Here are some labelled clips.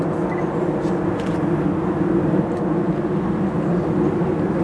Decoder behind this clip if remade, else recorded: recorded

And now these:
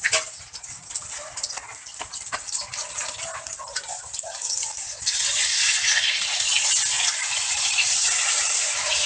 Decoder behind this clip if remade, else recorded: recorded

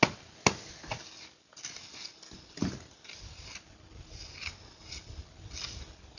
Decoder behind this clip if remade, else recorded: recorded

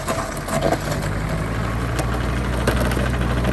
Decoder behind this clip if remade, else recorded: recorded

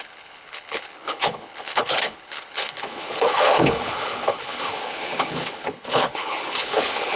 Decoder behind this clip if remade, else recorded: remade, codec, HILCodec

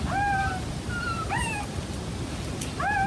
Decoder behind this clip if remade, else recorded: recorded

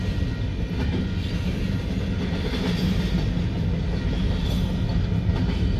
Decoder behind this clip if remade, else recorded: recorded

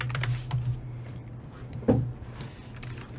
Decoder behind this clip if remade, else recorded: recorded